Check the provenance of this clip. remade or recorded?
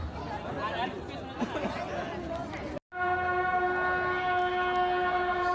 recorded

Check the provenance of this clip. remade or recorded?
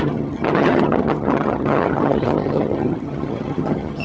remade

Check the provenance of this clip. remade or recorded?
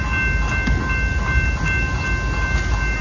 recorded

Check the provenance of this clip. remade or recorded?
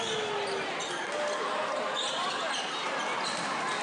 recorded